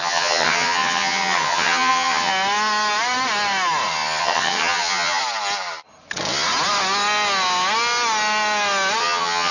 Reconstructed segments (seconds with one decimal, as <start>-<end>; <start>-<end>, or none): 0.0-2.3; 4.2-5.2; 9.0-9.5

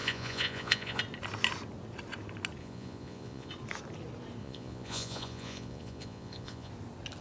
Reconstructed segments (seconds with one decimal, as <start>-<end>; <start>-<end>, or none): 0.0-1.0; 2.6-3.5; 4.4-6.7

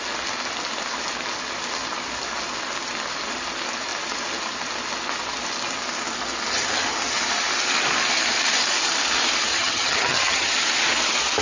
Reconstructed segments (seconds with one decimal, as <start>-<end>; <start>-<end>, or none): 9.5-10.5